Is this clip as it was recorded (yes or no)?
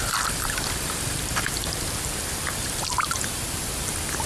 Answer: no